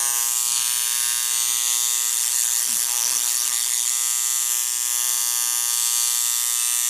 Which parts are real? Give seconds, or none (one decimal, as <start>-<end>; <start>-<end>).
0.0-2.1; 3.9-6.9